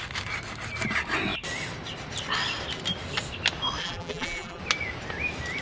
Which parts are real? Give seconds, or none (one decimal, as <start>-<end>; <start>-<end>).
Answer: 0.0-3.8; 4.6-5.6